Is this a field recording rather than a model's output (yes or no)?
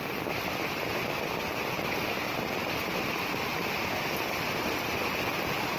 yes